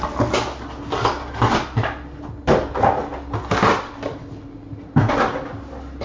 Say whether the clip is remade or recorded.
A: recorded